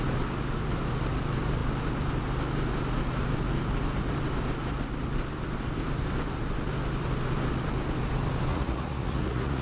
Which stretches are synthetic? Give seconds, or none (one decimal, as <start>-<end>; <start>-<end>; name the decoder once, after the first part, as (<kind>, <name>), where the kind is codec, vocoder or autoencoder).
8.5-9.6 (vocoder, Vocos)